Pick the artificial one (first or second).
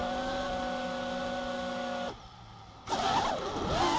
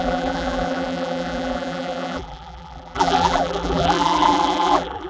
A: second